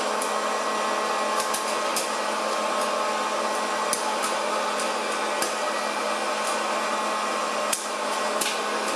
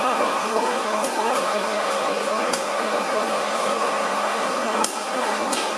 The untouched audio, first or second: first